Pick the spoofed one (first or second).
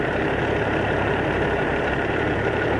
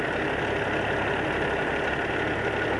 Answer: first